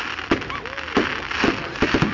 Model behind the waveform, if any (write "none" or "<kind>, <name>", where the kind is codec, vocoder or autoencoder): none